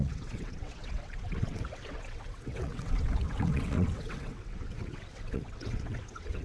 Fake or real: fake